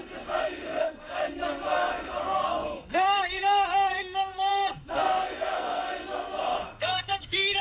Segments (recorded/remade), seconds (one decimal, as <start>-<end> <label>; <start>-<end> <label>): 0.0-7.6 remade